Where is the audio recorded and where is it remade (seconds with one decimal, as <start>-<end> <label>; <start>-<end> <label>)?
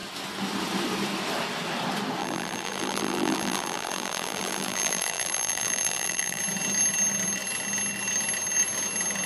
0.0-2.2 recorded; 2.2-6.4 remade; 6.4-9.3 recorded